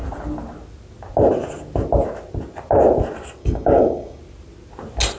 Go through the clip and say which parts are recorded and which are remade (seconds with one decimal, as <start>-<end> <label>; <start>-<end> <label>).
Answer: 0.0-3.4 recorded; 3.4-4.2 remade; 4.2-5.2 recorded